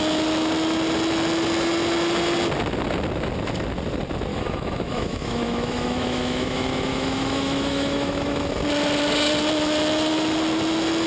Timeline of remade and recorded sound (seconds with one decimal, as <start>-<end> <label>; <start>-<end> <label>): 0.0-4.3 recorded; 4.3-8.5 remade; 8.5-11.1 recorded